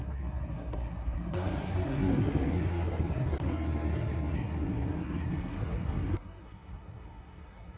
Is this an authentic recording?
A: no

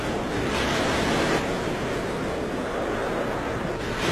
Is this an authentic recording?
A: yes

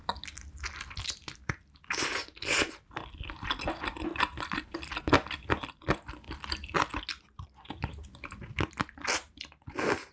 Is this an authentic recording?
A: yes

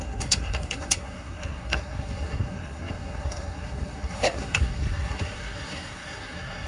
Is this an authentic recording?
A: no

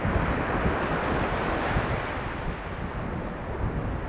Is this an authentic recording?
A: yes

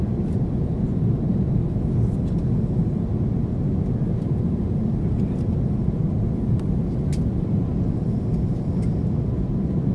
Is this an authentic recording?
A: yes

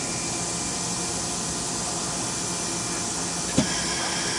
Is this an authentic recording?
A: yes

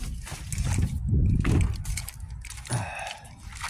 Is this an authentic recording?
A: yes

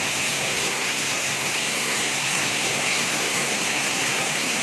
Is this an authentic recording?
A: no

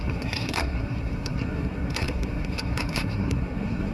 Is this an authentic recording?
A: no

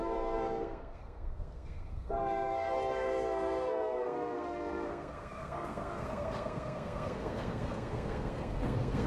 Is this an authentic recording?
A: no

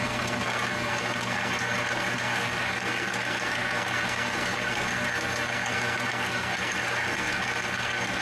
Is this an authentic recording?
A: no